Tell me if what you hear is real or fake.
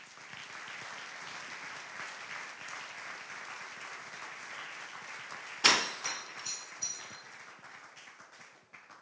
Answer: real